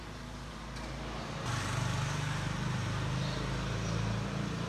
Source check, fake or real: real